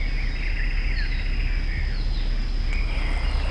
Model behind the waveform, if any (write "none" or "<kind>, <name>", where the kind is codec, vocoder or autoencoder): none